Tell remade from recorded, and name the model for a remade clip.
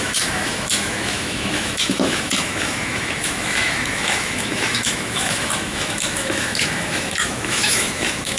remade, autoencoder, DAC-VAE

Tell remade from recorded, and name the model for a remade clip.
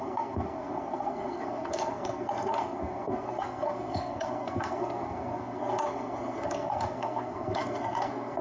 remade, codec, SNAC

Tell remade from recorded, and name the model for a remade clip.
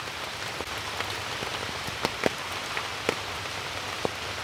recorded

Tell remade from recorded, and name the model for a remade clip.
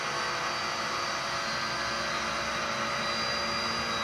recorded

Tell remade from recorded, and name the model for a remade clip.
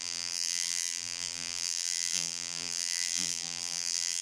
remade, vocoder, BigVGAN v2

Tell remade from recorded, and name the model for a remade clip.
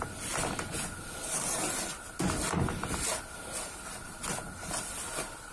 recorded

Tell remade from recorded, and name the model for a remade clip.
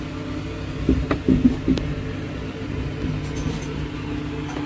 recorded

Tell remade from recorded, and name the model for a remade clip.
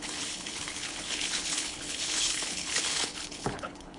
remade, codec, HILCodec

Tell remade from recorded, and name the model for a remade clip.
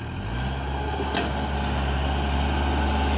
recorded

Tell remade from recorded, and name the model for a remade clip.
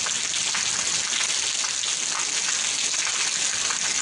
recorded